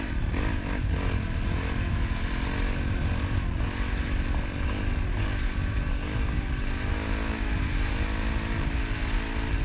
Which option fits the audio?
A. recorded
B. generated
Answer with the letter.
A